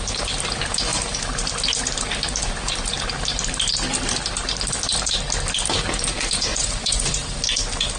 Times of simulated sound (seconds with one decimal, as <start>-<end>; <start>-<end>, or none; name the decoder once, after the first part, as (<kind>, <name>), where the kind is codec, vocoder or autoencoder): 6.5-7.0 (vocoder, Vocos)